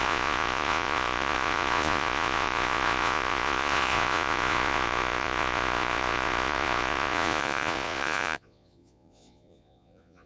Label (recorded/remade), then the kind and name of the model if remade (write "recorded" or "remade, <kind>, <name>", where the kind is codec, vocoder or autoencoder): remade, vocoder, Vocos